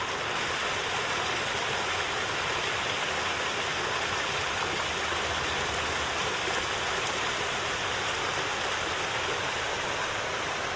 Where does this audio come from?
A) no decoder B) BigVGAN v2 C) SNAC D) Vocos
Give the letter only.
A